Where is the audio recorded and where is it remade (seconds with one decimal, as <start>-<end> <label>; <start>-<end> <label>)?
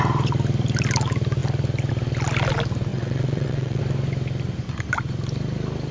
0.0-2.9 recorded; 2.9-3.8 remade; 3.8-5.9 recorded